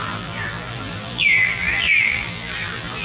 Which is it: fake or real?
fake